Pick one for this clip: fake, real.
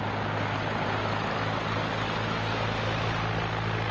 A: real